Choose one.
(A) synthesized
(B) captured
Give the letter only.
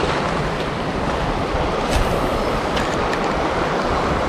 A